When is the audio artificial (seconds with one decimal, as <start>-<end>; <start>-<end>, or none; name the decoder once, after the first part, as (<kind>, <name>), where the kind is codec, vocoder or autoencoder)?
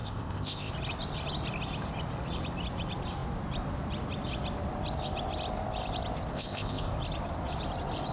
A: 0.0-0.7 (codec, ZipCodec); 6.3-6.9